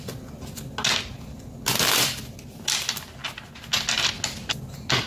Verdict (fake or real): real